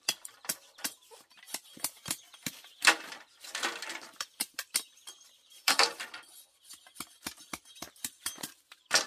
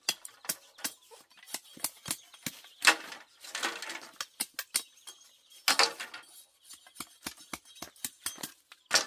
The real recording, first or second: second